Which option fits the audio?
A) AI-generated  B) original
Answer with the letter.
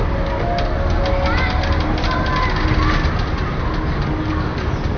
B